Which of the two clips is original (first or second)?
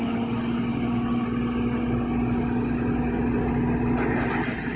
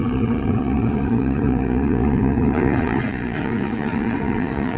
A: first